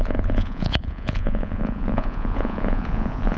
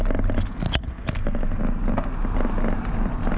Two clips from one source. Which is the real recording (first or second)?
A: second